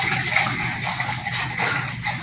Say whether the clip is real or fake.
real